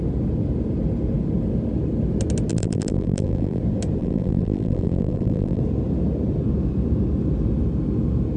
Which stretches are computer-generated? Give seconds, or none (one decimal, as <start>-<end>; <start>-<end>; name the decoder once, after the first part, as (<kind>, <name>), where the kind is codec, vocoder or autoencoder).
2.5-3.6 (vocoder, BigVGAN v2); 4.0-5.6